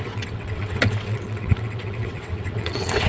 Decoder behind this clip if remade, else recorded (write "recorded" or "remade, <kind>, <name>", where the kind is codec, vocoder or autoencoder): remade, vocoder, WaveNeXt